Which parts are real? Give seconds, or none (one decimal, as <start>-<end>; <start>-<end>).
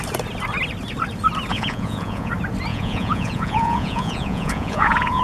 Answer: 0.0-1.5; 2.3-2.7